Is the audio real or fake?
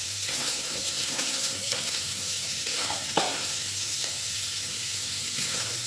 fake